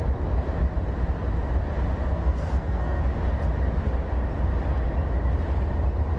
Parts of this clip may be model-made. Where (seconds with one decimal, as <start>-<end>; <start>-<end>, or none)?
2.1-3.0